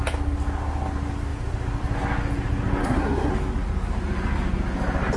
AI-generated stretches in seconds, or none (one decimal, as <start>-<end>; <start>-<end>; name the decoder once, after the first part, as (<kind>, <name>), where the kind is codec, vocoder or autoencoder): 2.8-3.3 (codec, SNAC)